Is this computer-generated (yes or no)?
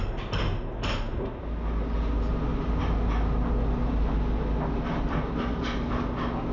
no